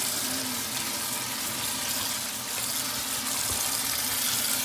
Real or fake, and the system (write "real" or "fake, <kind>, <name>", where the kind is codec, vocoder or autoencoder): real